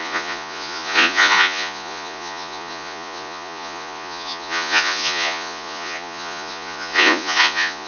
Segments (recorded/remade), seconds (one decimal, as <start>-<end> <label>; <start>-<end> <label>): 0.0-7.9 remade